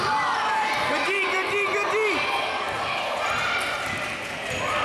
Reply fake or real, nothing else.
real